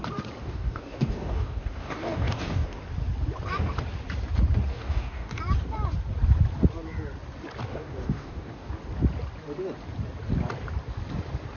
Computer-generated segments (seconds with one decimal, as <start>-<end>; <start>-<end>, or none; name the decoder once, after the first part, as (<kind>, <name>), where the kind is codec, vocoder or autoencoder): 0.4-2.8 (codec, DAC); 4.7-5.4; 7.7-8.7